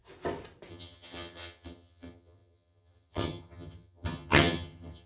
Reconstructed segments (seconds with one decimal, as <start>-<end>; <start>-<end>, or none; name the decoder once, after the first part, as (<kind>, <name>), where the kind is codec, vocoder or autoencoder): 0.7-5.1 (vocoder, HiFi-GAN)